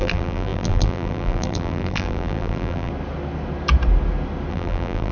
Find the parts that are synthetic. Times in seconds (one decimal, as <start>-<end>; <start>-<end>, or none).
0.0-2.9; 4.5-5.1